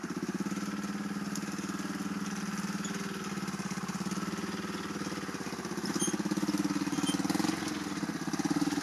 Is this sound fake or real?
real